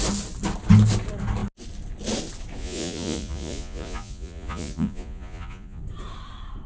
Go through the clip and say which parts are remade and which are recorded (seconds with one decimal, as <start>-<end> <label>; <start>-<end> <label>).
0.0-2.6 recorded; 2.6-5.8 remade; 5.8-6.7 recorded